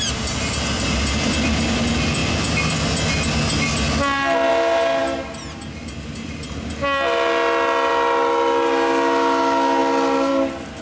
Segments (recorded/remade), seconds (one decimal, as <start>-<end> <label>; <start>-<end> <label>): 0.0-10.8 recorded